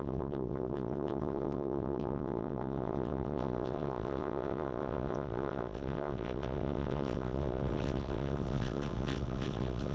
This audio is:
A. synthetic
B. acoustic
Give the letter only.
A